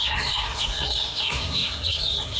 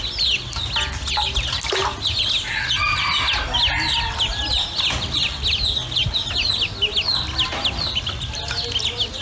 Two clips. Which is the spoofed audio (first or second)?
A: first